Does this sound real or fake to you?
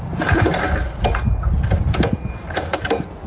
real